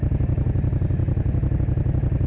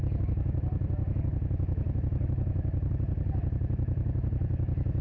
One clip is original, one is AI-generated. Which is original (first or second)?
first